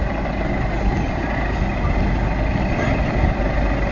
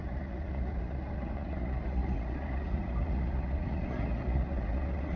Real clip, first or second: first